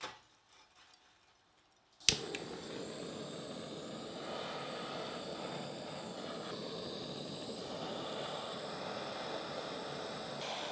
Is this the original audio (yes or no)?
yes